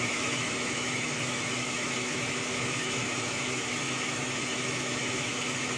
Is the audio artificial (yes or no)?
yes